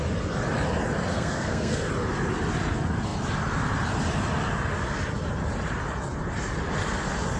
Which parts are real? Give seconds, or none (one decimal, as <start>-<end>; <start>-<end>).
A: 0.0-1.1; 1.9-7.4